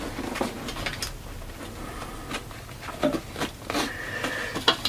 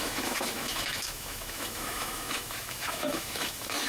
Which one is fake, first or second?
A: second